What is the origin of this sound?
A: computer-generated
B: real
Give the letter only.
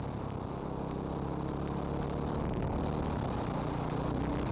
B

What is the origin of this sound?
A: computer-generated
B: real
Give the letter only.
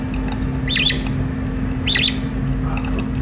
B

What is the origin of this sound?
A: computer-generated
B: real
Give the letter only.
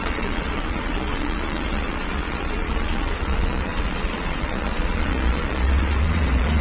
A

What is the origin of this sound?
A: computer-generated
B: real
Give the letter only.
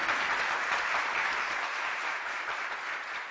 B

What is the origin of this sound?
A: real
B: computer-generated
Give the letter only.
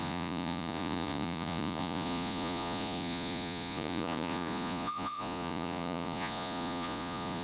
B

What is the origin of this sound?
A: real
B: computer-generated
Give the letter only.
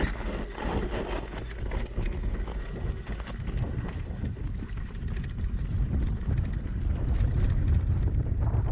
A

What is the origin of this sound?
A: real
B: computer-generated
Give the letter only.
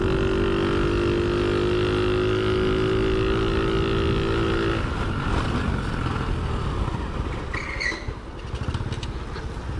A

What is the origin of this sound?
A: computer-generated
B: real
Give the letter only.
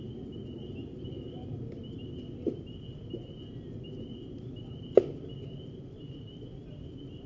B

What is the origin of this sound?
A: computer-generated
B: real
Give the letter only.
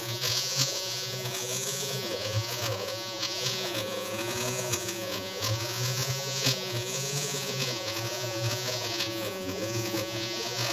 A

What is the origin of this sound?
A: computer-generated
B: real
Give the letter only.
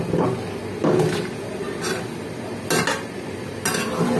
B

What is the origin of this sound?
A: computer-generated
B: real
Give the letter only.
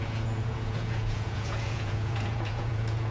A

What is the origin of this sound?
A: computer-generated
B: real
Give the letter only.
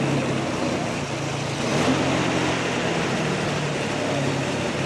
B